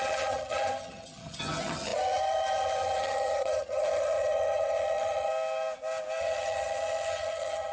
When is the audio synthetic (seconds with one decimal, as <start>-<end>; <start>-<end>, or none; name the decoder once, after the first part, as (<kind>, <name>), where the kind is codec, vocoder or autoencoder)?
0.0-5.3 (vocoder, HiFi-GAN); 6.2-7.7